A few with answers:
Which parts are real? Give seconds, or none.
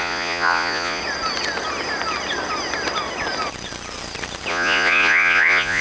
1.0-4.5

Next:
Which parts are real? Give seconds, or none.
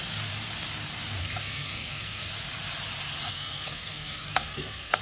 0.0-1.2; 2.3-3.3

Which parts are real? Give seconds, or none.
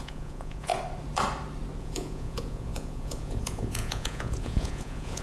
0.7-1.8